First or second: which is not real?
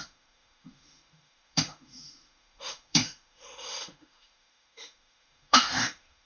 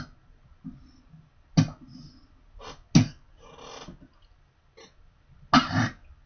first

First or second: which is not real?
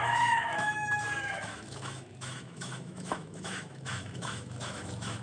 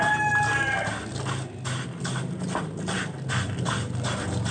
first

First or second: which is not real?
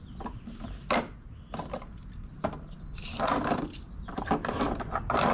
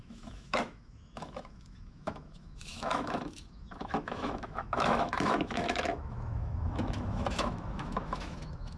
second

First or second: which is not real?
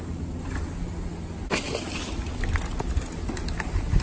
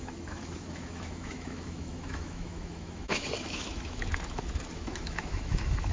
second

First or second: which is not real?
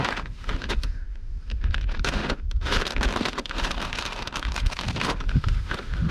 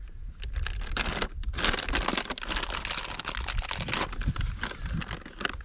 first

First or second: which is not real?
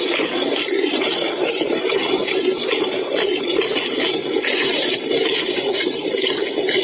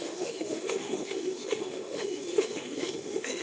second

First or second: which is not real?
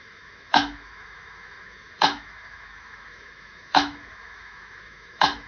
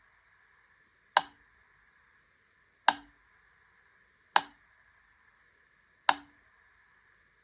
first